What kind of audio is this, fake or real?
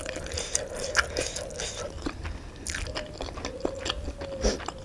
real